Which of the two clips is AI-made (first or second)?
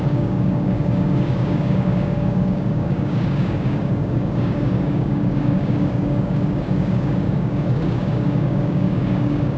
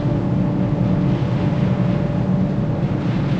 first